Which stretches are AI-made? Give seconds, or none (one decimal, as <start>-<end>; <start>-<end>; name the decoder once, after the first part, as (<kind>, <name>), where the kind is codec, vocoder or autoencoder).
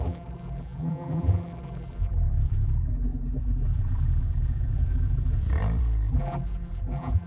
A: 0.0-5.4 (vocoder, BigVGAN v2); 6.1-7.3